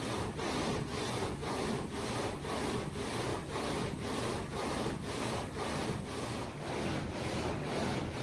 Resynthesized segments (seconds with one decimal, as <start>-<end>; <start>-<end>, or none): 0.9-1.6